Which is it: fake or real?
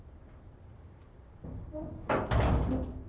real